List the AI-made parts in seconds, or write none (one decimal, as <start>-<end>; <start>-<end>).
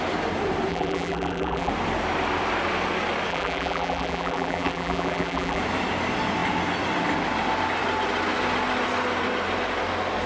0.7-1.7; 3.3-5.6